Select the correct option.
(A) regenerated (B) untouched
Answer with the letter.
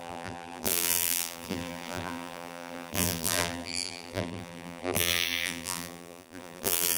A